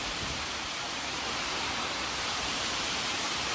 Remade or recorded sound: remade